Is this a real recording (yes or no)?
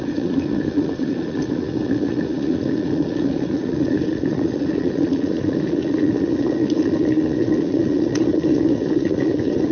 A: no